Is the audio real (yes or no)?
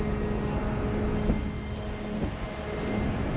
yes